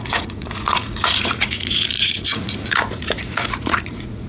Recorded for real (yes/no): no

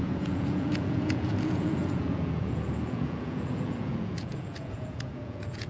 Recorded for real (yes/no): no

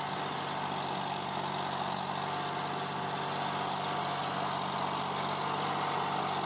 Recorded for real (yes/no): yes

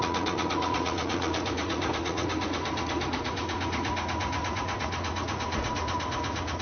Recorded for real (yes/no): no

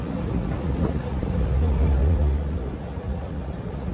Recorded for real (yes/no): no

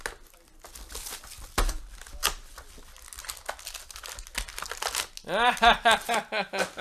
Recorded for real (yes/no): yes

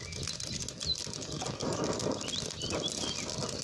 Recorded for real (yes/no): yes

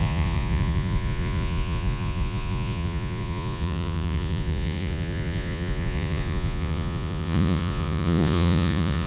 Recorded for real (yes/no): no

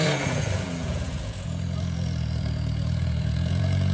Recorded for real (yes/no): no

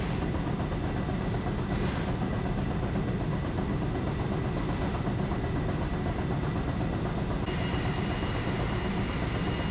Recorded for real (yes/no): yes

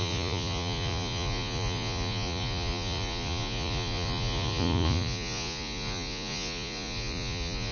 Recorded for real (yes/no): no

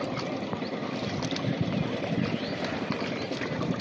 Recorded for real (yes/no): yes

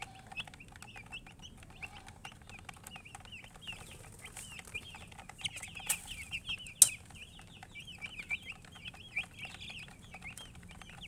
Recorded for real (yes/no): yes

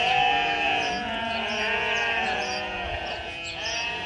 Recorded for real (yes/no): no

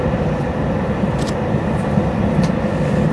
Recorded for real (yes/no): yes